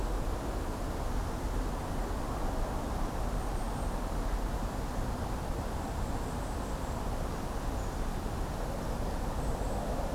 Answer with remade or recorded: recorded